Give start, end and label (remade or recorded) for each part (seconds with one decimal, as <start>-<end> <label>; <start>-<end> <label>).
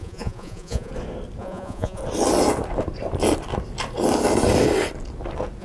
0.0-0.9 remade; 0.9-1.4 recorded; 1.4-2.0 remade; 2.0-5.6 recorded